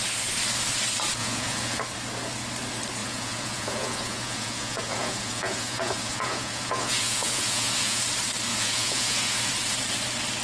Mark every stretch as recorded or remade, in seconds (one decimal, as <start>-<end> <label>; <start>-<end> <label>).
0.0-1.2 recorded; 1.2-1.8 remade; 1.8-3.0 recorded; 3.0-8.0 remade; 8.0-8.5 recorded; 8.5-9.5 remade; 9.5-10.4 recorded